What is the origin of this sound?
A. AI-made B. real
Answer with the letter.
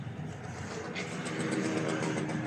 B